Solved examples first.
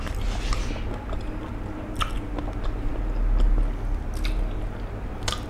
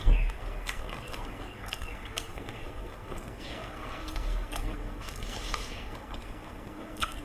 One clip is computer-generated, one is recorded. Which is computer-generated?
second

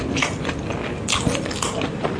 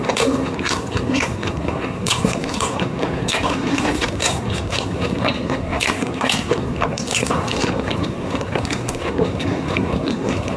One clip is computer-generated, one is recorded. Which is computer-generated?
second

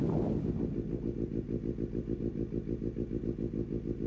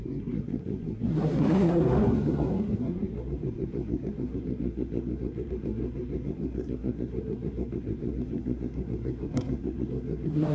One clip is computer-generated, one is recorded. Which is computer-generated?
second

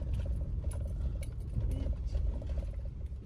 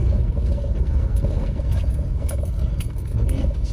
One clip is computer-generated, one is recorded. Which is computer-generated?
second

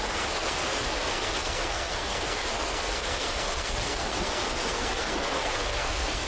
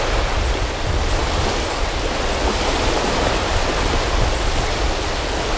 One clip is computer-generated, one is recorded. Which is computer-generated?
first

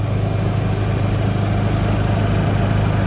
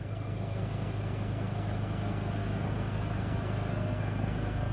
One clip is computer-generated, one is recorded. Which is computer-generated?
second